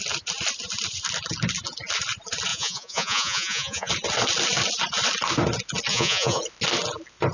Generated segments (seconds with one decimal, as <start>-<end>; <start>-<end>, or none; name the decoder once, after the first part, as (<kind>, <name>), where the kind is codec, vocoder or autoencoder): 2.5-3.9 (vocoder, Vocos); 5.9-6.4